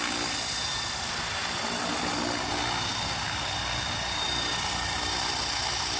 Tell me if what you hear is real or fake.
real